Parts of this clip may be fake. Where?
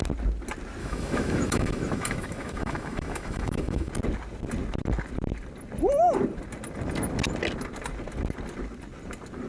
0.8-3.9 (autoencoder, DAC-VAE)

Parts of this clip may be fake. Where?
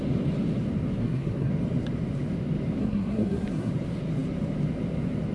1.0-1.5 (codec, SNAC); 2.8-3.7